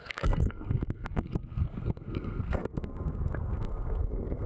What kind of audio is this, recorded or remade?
remade